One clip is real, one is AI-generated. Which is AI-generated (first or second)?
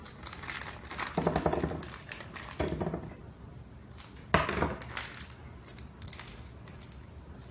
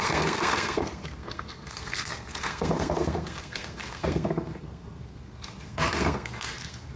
second